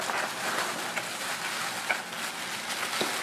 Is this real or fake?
real